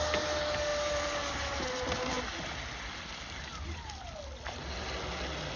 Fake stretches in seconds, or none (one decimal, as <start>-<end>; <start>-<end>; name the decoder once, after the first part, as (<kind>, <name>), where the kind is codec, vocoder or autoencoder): none